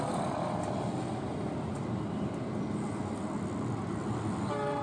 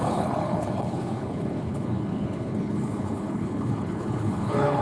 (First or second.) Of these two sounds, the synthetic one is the second